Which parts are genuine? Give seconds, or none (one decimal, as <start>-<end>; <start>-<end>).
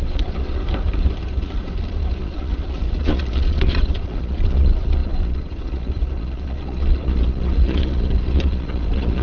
0.6-2.2